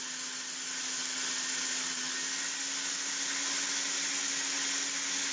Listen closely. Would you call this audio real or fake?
real